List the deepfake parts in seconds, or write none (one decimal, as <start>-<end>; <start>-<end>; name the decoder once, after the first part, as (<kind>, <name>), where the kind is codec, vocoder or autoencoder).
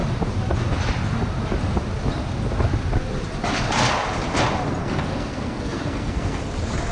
4.8-6.4 (codec, SNAC)